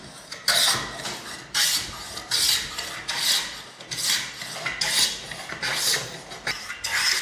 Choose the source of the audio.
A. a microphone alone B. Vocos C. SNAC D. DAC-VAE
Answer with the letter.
A